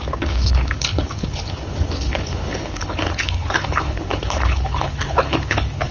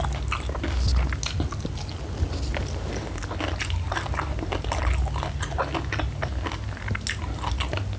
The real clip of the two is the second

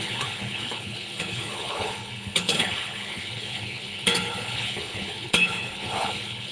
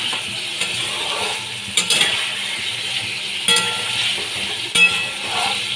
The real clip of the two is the second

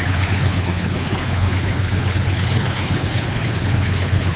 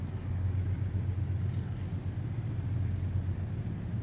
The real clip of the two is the second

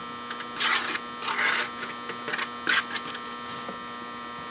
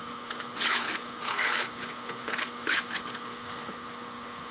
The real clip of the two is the first